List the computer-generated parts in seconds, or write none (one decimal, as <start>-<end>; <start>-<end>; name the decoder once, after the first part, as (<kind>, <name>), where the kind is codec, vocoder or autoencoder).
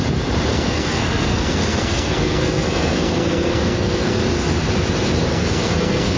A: 0.5-4.2 (codec, SNAC); 5.3-6.2